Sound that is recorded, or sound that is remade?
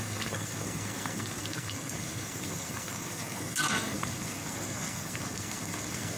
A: remade